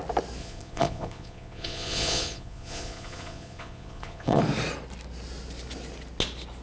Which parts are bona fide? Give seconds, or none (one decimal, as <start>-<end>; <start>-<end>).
0.0-0.4; 4.4-6.6